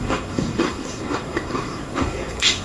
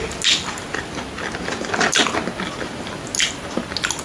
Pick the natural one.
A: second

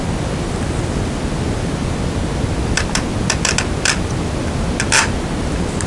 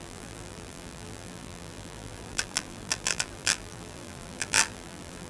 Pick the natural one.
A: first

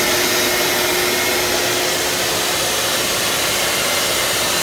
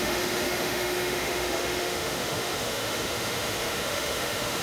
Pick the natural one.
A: first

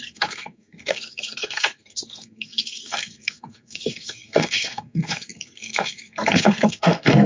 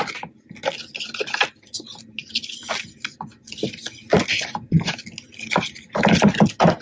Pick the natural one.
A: second